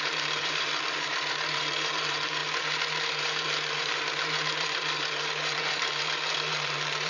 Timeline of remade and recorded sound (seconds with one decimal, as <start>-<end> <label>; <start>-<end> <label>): 0.0-7.1 remade